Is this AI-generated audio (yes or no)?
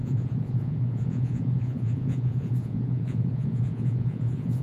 yes